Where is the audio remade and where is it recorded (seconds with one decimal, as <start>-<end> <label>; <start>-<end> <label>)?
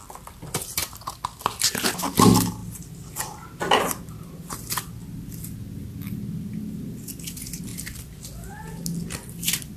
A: 0.0-9.8 recorded